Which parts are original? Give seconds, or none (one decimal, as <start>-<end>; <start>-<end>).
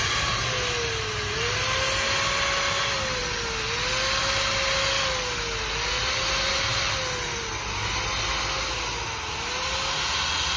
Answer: 0.0-10.6